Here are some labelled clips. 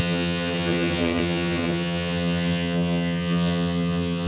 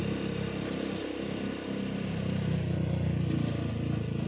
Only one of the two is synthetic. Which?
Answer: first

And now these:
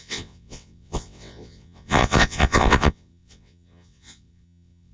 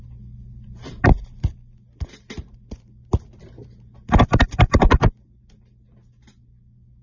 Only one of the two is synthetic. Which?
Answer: first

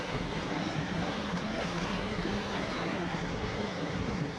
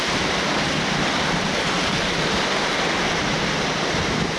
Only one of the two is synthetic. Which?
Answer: first